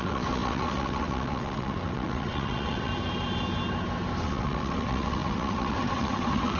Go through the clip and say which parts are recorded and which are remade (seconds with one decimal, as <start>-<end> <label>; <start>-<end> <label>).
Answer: 0.0-2.9 remade; 2.9-4.2 recorded; 4.2-6.6 remade